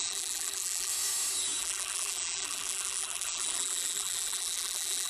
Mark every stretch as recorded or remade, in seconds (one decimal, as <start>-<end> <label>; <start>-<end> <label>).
0.0-0.9 remade; 0.9-1.6 recorded; 1.6-5.1 remade